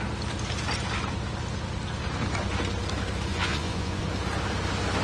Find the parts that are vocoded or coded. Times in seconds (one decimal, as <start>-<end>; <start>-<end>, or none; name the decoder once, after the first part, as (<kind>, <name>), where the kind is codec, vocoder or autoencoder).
3.3-4.0 (vocoder, Vocos)